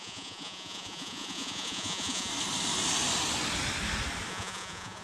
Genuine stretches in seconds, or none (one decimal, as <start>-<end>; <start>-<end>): 2.3-4.3